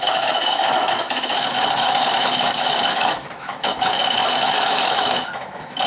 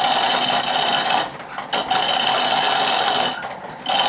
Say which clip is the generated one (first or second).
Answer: first